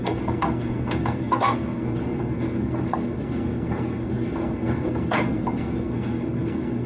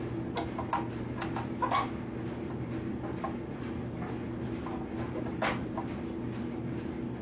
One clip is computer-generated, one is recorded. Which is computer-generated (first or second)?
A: first